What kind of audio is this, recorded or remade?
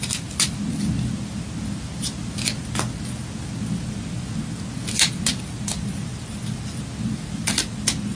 recorded